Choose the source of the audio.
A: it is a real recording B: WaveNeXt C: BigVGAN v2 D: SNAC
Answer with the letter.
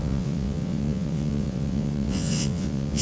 B